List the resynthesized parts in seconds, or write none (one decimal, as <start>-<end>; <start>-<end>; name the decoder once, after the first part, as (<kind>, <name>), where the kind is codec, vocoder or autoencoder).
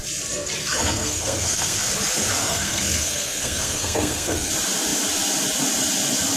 0.6-1.9 (codec, SNAC); 2.4-4.5